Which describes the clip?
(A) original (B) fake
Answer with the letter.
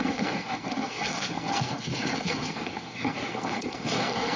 B